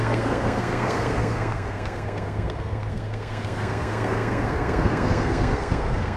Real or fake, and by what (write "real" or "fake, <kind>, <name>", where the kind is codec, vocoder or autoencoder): fake, codec, SNAC